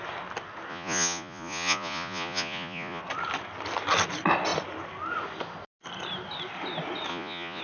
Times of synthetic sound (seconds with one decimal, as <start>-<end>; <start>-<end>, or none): 0.7-3.0; 7.1-7.6